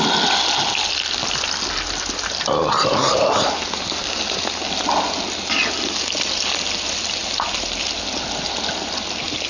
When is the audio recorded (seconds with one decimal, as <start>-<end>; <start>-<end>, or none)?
0.0-9.5

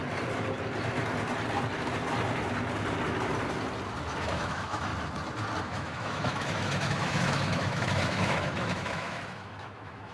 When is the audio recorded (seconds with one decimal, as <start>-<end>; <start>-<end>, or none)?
0.0-4.2; 4.9-5.6

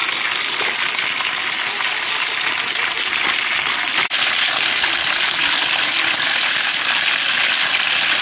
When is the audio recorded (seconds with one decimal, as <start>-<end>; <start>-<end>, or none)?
0.0-8.2

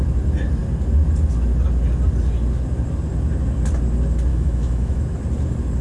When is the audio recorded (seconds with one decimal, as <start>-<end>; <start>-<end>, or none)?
0.0-4.3; 5.0-5.8

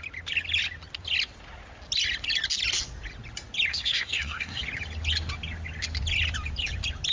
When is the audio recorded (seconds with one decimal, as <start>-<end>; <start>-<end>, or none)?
0.0-3.7; 4.6-7.1

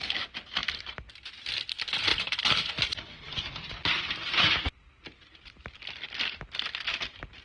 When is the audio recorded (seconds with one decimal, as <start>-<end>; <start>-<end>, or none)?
0.0-0.6; 1.4-2.1; 5.8-7.4

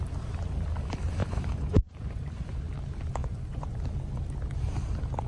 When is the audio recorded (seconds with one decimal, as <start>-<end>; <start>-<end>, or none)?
0.0-1.2; 2.6-3.2; 3.8-5.3

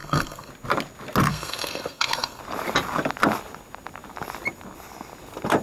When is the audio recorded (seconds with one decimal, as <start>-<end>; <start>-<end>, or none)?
0.5-1.3; 2.4-5.6